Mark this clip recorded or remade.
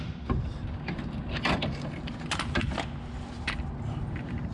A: recorded